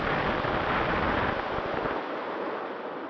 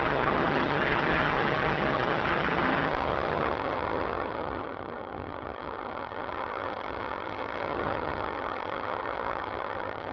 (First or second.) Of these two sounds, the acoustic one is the first